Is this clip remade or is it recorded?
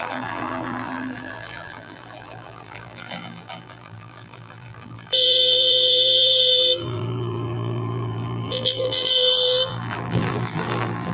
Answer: remade